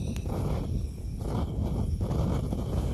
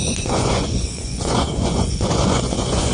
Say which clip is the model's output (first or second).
second